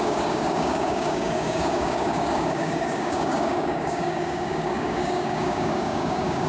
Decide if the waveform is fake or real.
fake